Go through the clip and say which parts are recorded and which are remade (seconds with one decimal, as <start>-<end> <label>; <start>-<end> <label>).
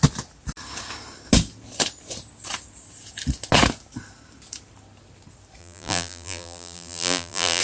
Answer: 0.0-5.6 recorded; 5.6-7.6 remade